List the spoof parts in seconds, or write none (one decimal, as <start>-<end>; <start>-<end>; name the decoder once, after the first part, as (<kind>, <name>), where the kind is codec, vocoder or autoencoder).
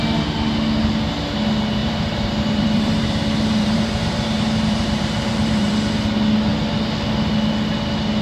1.8-5.7 (vocoder, BigVGAN v2)